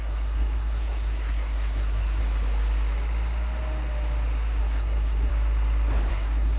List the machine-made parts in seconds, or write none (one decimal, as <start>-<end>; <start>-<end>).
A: 0.0-2.2; 4.6-5.3; 6.1-6.6